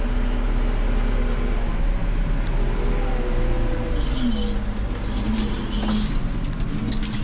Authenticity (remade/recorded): recorded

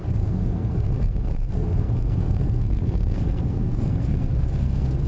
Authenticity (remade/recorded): remade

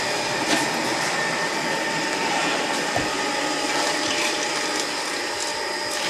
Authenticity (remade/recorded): recorded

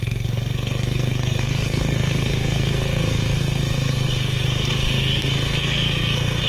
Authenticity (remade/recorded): remade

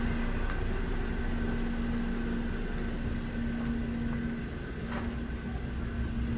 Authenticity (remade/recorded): recorded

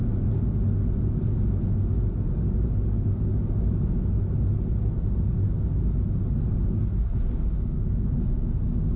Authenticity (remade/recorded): recorded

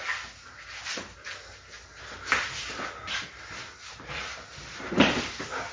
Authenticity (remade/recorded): recorded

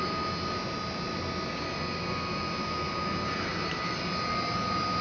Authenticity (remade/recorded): recorded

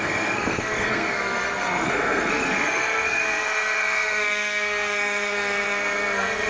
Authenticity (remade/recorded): remade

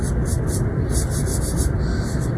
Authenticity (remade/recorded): recorded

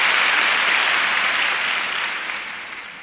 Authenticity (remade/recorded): recorded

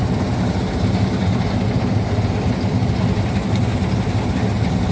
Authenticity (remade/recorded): recorded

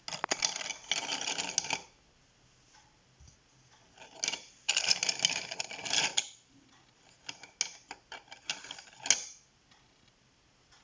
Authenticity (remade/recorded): recorded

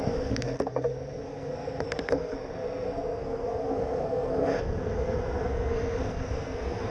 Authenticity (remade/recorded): remade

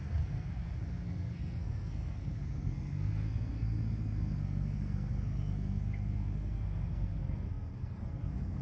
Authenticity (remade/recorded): remade